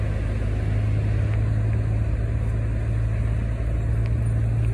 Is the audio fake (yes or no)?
no